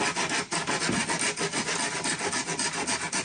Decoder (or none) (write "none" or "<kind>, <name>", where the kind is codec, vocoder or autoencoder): none